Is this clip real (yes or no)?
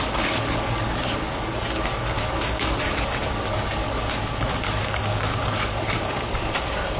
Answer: no